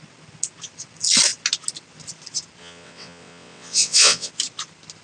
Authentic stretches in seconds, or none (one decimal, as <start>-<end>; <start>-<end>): 0.0-2.6; 4.3-5.0